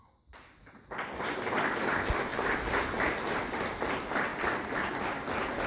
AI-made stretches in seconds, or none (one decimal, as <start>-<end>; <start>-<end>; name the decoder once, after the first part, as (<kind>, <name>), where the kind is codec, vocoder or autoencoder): 2.3-3.5 (vocoder, BigVGAN v2); 4.3-5.0

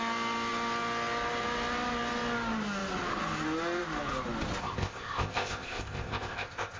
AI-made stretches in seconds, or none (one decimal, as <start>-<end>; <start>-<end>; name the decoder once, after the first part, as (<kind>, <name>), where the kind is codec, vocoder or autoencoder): 4.6-6.8 (codec, ZipCodec)

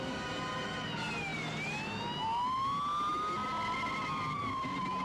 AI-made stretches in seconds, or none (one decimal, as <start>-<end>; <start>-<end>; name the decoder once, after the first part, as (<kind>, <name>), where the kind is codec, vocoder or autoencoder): none

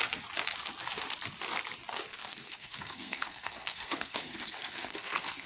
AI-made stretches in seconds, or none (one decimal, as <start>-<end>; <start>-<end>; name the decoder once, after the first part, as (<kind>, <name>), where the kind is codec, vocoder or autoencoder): 2.1-5.5 (codec, SNAC)

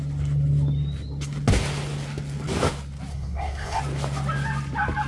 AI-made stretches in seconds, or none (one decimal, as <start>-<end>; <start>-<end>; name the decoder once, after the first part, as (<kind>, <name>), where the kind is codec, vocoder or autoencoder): 3.1-3.8 (codec, SNAC)